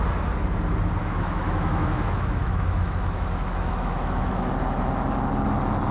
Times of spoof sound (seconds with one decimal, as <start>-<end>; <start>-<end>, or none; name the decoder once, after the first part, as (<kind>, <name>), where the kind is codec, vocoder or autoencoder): 1.0-4.5 (autoencoder, DAC-VAE)